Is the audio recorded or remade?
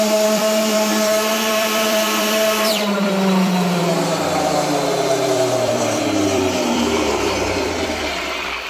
remade